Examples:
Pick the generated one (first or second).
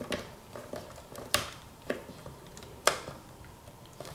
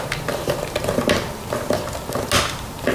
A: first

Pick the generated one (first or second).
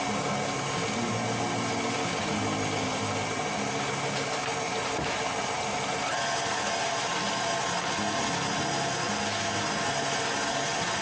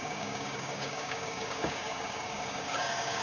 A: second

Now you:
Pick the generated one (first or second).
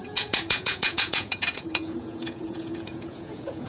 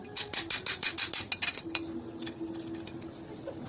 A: first